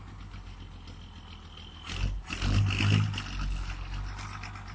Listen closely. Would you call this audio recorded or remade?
recorded